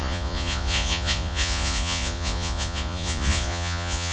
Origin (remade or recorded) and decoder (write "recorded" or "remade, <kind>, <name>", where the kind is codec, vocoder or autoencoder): remade, vocoder, Vocos